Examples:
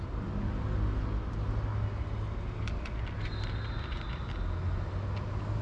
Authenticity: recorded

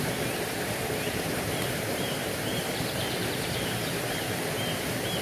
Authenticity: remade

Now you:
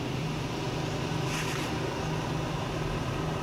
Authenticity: recorded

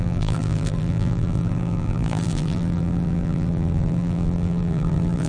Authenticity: remade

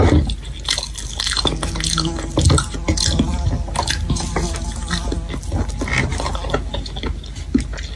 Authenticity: recorded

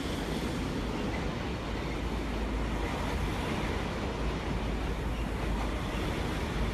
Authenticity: recorded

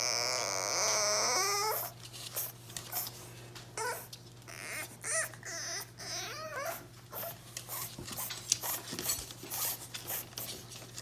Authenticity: recorded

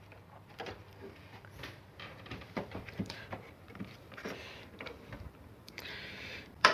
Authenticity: remade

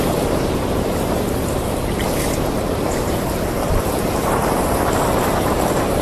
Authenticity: remade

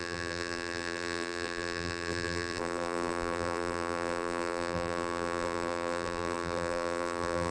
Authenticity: remade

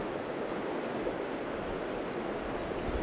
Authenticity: recorded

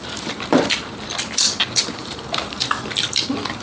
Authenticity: remade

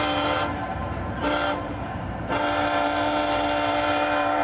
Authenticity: remade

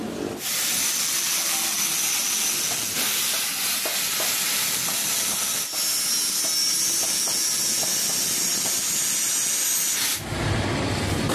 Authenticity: recorded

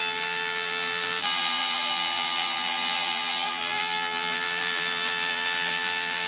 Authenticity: remade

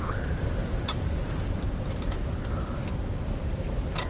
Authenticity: remade